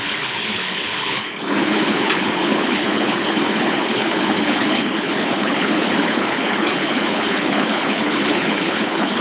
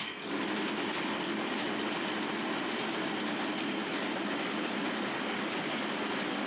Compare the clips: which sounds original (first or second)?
second